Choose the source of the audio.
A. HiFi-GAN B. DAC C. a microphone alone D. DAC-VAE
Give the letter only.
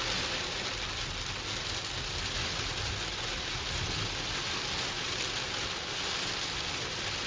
C